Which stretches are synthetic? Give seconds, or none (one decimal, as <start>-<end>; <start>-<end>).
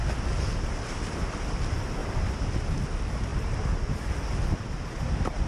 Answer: 2.0-2.5; 3.3-4.1